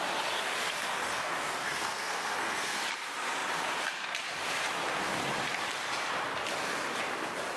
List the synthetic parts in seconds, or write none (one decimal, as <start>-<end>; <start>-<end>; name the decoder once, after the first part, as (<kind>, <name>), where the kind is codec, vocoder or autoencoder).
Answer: 1.0-2.8 (codec, SNAC)